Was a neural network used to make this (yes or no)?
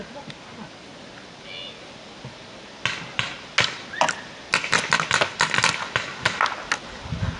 no